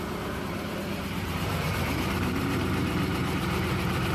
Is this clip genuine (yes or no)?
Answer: no